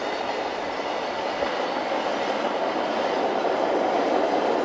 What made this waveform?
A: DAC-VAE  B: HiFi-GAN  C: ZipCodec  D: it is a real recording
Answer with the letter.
D